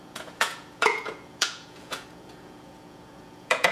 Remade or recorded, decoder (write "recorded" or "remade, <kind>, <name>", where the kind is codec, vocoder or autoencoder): remade, vocoder, Vocos